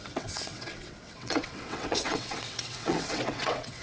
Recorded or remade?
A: remade